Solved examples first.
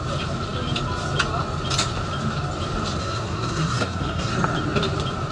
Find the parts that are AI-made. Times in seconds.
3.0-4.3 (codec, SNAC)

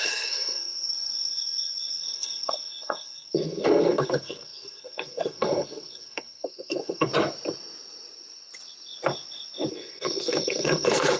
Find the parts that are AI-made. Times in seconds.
0.0-7.1 (codec, SNAC); 9.7-11.2

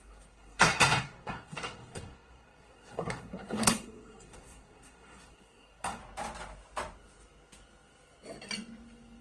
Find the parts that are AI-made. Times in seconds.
0.0-6.0 (codec, SNAC)